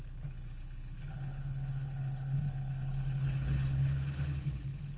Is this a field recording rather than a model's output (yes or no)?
no